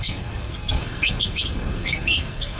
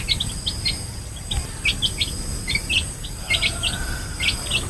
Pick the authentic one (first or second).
second